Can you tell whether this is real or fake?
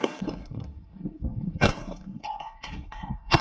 fake